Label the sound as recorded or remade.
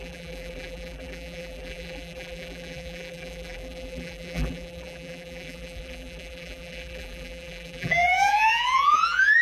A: remade